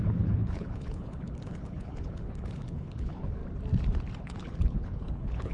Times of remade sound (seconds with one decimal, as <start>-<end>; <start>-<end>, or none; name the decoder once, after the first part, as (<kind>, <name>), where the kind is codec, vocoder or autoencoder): 0.0-3.4 (codec, HILCodec); 4.2-5.5